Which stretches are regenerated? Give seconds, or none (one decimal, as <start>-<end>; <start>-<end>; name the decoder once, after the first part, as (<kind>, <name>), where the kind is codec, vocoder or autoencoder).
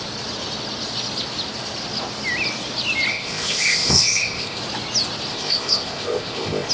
3.1-4.6 (codec, ZipCodec); 5.3-6.7